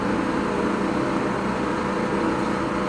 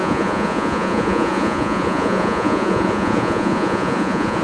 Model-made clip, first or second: second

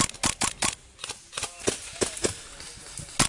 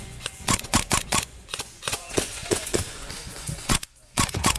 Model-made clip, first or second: second